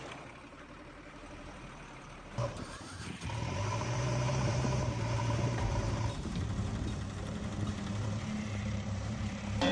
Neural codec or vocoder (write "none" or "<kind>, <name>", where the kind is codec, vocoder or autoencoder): vocoder, BigVGAN v2